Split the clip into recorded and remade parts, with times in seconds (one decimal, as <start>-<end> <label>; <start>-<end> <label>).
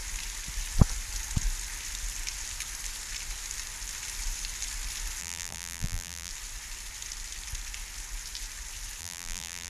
0.0-5.2 recorded; 5.2-6.3 remade; 6.3-9.0 recorded; 9.0-9.7 remade